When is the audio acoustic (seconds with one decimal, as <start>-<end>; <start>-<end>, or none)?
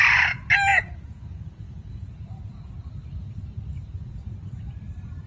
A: 0.0-0.7; 2.6-5.3